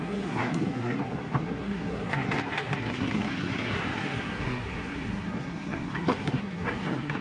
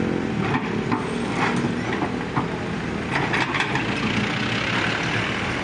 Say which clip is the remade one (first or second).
first